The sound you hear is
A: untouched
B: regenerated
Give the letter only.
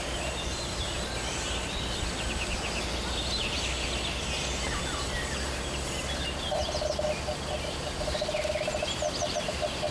A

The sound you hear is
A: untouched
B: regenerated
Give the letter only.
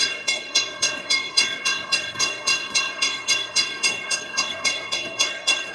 B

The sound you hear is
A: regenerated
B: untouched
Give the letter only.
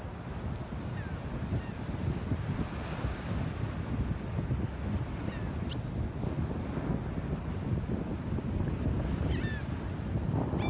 B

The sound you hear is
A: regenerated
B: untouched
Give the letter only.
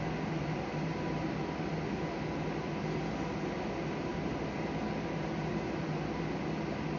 B